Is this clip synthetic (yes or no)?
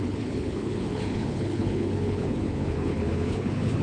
yes